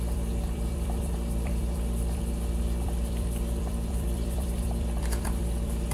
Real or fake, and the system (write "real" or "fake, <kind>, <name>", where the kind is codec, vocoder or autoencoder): fake, vocoder, BigVGAN v2